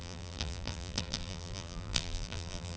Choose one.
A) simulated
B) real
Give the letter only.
A